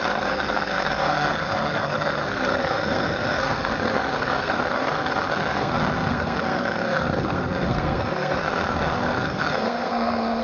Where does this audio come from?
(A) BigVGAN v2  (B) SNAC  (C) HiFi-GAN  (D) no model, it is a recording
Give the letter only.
B